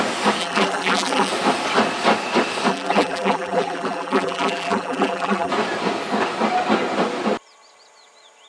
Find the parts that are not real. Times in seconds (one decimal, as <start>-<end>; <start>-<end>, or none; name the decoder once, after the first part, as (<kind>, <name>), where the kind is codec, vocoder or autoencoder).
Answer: 0.4-1.3 (vocoder, BigVGAN v2); 2.7-5.5